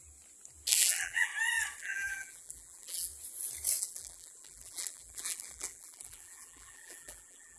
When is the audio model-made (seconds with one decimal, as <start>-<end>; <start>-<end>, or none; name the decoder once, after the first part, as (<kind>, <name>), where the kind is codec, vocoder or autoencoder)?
0.7-1.3 (vocoder, BigVGAN v2); 1.8-3.1; 3.8-7.6